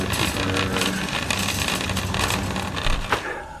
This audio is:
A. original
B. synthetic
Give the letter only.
A